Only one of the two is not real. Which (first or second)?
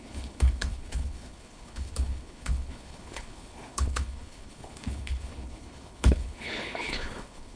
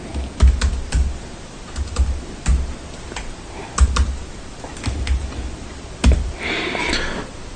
first